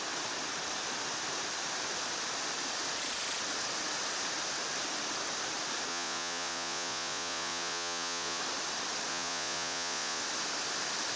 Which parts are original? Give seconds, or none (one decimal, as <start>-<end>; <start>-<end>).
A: 0.0-5.9; 8.4-9.1; 10.2-11.2